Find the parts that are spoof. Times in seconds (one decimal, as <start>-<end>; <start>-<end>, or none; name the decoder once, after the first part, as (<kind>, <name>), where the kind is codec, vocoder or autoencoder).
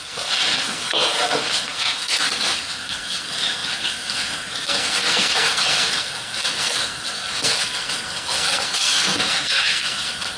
0.0-10.4 (codec, SNAC)